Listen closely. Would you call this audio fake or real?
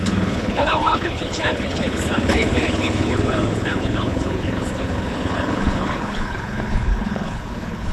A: fake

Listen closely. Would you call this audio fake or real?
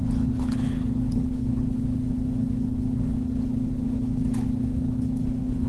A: fake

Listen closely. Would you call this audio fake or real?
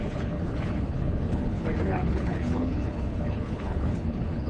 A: fake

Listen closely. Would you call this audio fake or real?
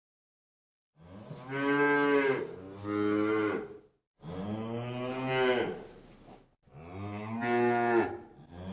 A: real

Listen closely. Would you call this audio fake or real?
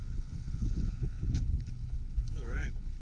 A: fake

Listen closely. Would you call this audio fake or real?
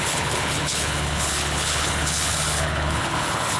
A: fake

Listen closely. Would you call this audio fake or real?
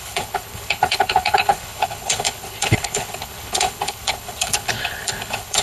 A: fake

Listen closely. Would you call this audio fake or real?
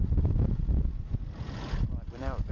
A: real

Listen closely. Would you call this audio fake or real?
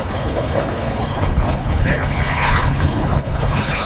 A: fake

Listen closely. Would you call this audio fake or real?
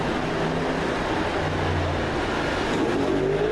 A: real